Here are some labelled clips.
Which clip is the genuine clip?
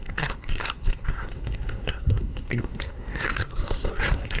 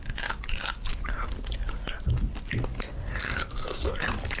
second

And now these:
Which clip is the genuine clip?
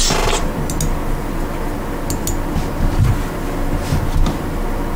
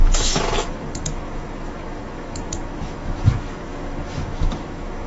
first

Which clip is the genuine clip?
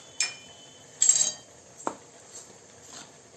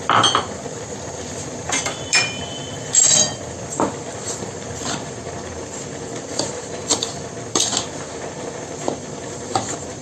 first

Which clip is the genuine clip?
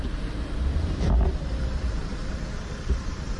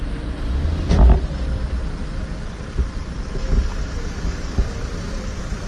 second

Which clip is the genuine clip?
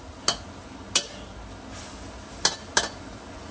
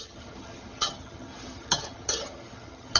first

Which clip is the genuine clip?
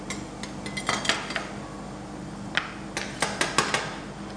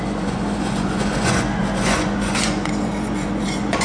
first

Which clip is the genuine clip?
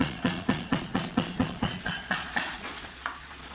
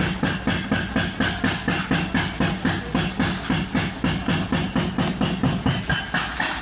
second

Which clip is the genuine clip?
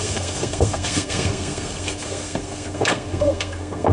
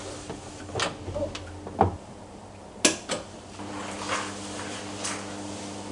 second